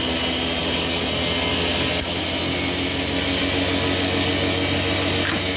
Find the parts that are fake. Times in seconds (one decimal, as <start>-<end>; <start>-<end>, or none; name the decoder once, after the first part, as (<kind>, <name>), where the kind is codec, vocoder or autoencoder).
none